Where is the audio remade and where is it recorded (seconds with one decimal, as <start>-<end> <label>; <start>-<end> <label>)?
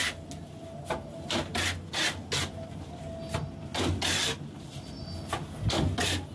0.0-6.3 recorded